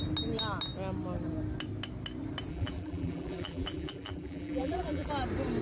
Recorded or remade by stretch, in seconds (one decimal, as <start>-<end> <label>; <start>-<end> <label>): 0.0-2.5 recorded; 2.5-5.1 remade; 5.1-5.6 recorded